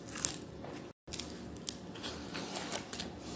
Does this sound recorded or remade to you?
recorded